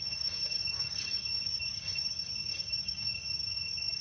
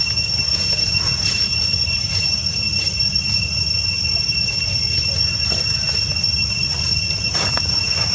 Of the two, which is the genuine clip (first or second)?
second